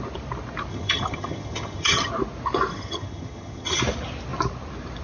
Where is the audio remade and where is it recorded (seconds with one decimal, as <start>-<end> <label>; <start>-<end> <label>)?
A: 0.0-0.7 recorded; 0.7-2.1 remade; 2.1-2.7 recorded; 2.7-3.8 remade; 3.8-5.0 recorded